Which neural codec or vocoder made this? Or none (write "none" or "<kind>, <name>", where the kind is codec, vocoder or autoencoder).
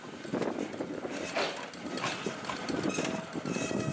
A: none